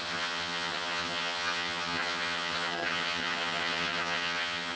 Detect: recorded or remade remade